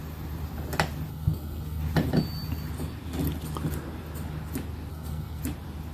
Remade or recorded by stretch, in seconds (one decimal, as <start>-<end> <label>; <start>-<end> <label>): 0.0-1.1 recorded; 1.1-1.8 remade; 1.8-4.9 recorded; 4.9-5.4 remade; 5.4-5.9 recorded